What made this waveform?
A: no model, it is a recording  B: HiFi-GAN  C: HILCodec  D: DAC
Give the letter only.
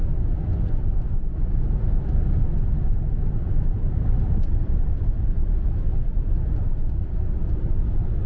A